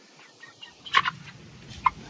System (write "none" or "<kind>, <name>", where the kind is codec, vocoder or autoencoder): none